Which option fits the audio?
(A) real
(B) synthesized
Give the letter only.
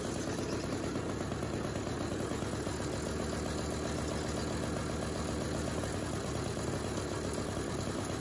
A